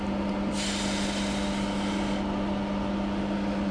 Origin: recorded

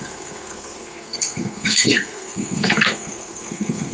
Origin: remade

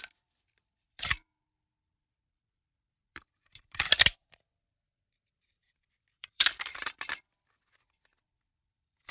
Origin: remade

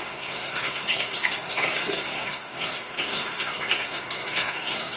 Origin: remade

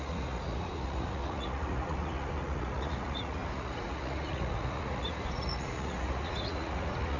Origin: remade